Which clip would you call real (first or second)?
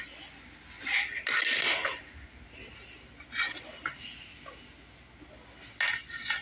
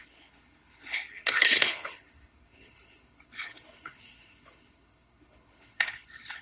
first